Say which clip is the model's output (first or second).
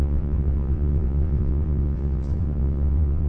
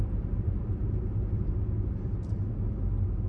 first